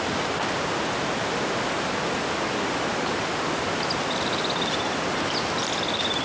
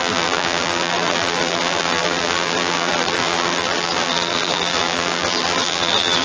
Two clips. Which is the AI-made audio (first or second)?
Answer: second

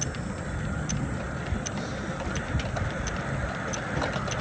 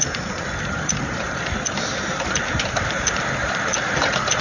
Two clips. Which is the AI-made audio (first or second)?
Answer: second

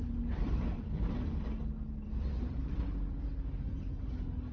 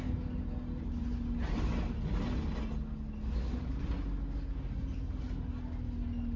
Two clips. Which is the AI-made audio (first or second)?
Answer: first